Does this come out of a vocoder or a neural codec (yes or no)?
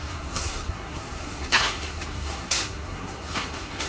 yes